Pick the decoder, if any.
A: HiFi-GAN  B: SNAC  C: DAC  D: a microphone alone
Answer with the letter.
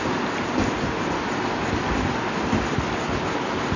D